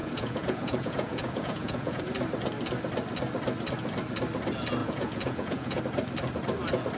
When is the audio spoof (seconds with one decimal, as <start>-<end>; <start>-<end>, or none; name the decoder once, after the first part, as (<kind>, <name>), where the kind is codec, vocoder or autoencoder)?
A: 0.0-2.0 (vocoder, Vocos); 4.8-5.8